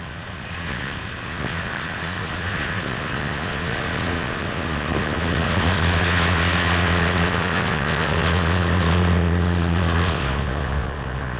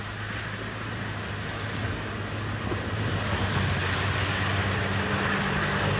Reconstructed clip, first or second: first